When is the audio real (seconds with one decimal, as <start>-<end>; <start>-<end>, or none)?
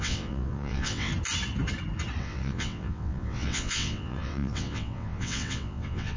1.1-2.2